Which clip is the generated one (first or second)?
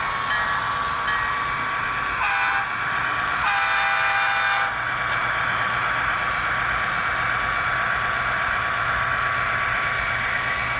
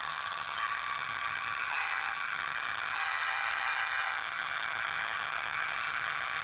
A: second